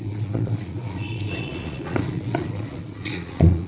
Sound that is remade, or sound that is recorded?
remade